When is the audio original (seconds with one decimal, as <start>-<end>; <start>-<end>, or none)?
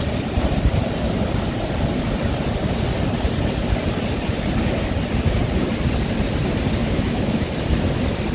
0.0-6.8; 7.5-8.3